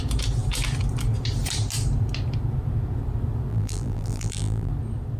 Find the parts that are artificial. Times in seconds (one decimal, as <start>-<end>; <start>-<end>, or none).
3.5-4.7